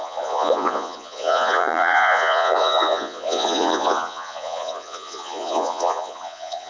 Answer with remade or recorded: remade